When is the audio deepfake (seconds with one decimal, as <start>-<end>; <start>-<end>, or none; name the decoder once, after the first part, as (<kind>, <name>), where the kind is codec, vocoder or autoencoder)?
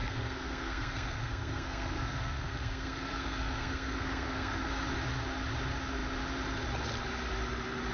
0.0-4.7 (codec, SNAC)